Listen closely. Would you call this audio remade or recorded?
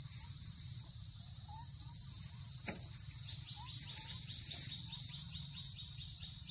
remade